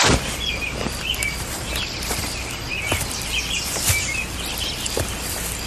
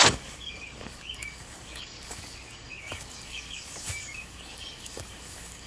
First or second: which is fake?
second